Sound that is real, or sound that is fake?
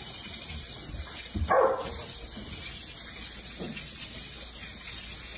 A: real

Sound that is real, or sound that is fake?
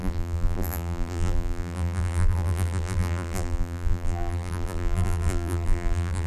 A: fake